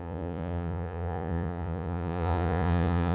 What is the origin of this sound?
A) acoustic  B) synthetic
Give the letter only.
B